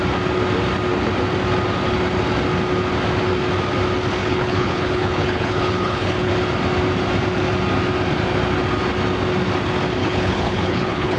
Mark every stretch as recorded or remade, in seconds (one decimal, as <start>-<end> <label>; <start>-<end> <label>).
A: 0.0-4.2 recorded; 4.2-6.3 remade; 6.3-10.0 recorded; 10.0-11.2 remade